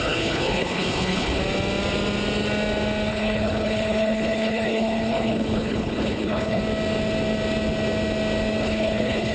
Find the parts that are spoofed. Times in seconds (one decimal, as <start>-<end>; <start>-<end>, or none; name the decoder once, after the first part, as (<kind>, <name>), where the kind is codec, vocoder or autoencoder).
0.0-1.4 (codec, HILCodec); 3.1-6.6; 8.6-9.3